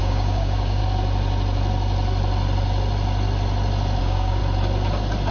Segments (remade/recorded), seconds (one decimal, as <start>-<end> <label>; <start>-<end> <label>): 0.0-0.8 remade; 0.8-4.0 recorded; 4.0-4.4 remade; 4.4-5.3 recorded